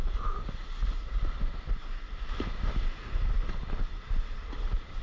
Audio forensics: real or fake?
real